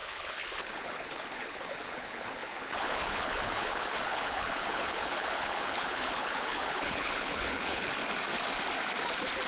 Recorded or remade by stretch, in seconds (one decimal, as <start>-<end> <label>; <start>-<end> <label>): 0.0-7.9 remade; 7.9-9.5 recorded